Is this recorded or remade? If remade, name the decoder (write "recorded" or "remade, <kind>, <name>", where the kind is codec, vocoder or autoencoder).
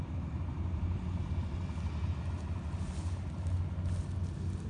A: recorded